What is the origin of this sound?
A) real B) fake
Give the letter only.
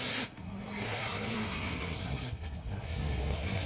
B